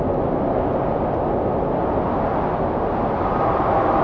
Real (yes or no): yes